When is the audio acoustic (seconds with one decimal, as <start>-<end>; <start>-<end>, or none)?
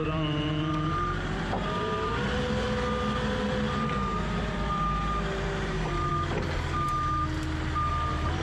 6.1-7.9